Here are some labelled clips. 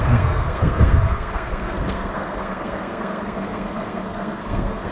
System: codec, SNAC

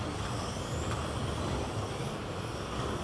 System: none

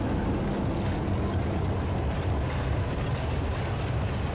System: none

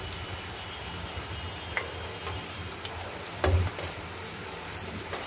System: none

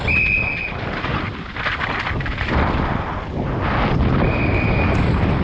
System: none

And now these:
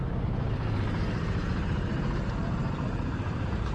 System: vocoder, BigVGAN v2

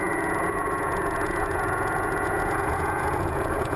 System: vocoder, Vocos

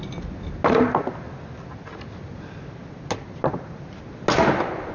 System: none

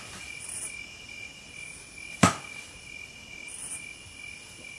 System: none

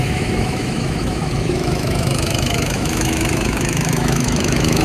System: autoencoder, DAC-VAE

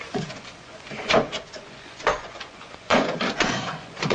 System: vocoder, Vocos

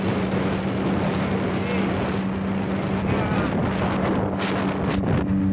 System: none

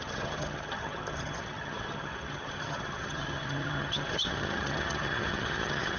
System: vocoder, HiFi-GAN